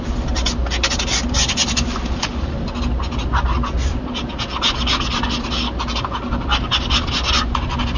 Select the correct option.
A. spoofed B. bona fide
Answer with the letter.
B